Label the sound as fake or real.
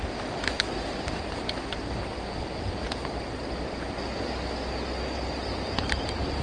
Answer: real